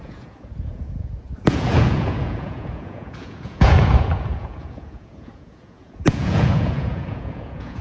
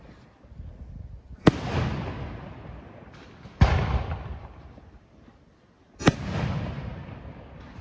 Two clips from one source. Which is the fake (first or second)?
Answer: first